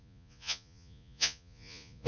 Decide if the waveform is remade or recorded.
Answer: remade